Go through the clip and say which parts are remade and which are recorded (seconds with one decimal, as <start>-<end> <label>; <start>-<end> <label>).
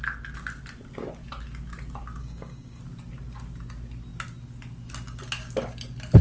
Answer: 0.0-2.2 recorded; 2.2-2.8 remade; 2.8-6.2 recorded